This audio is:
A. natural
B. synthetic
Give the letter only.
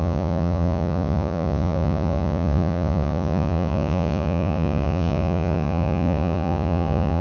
B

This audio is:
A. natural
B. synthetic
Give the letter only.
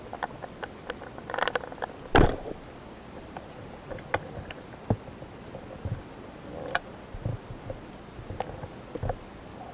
A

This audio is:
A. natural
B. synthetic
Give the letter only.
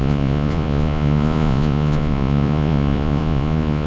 B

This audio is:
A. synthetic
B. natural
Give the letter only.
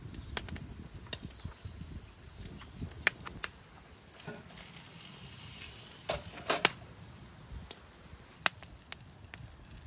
B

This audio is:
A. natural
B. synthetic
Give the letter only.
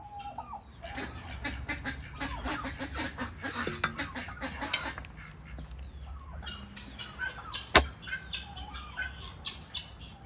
A